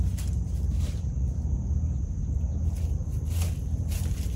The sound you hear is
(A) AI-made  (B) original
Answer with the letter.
B